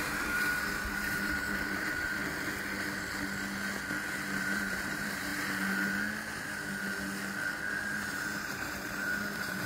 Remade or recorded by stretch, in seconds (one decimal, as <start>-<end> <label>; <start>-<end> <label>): 0.0-2.2 remade; 2.2-4.4 recorded; 4.4-5.3 remade; 5.3-7.7 recorded; 7.7-9.7 remade